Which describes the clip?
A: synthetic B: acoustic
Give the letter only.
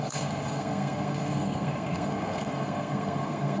A